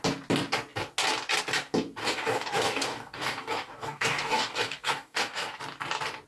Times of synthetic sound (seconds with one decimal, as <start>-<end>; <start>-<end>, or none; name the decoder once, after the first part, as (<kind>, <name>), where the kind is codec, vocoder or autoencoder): 2.0-5.6 (codec, DAC)